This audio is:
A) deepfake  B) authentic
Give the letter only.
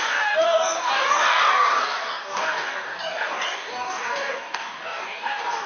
A